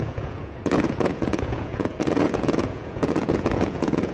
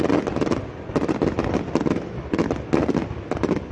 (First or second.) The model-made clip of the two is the first